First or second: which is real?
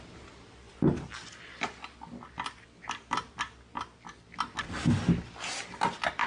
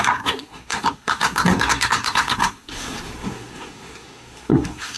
first